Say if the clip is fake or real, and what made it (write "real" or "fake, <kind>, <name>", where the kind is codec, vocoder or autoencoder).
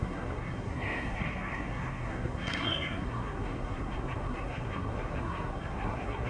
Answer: fake, codec, SNAC